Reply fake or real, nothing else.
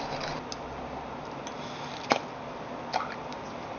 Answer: real